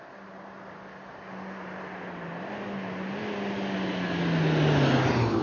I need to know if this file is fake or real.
real